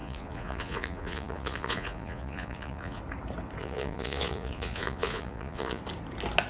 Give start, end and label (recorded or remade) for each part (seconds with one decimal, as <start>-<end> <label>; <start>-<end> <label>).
0.0-3.0 remade; 3.0-3.6 recorded; 3.6-5.8 remade; 5.8-6.5 recorded